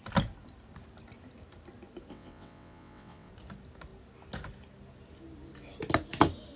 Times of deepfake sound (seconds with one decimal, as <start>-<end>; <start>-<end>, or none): 2.1-3.3